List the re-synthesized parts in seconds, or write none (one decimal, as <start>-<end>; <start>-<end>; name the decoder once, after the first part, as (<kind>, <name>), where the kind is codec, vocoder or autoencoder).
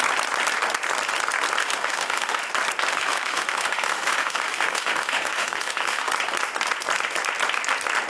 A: 1.6-2.4 (autoencoder, DAC-VAE); 2.9-6.1